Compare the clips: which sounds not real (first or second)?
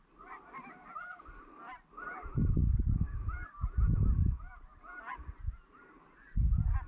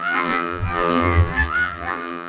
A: second